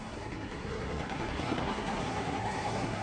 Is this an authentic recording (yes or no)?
no